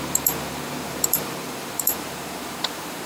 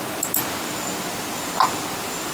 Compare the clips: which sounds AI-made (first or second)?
first